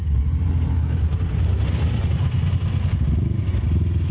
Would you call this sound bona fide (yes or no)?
yes